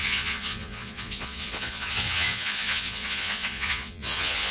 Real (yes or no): no